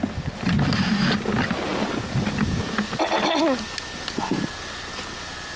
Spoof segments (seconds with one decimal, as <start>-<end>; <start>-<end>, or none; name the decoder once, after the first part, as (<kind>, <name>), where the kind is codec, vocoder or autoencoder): none